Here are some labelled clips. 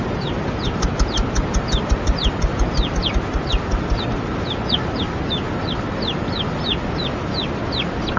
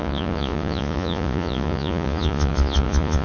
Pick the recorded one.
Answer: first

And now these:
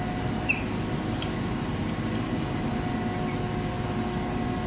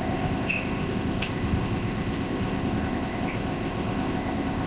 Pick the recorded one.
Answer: first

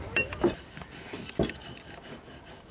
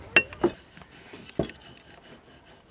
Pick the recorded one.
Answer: second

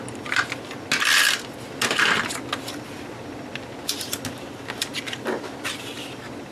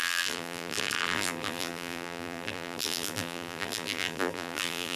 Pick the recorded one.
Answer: first